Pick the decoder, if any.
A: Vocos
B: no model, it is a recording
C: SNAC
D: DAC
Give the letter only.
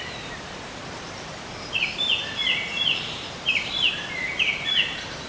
B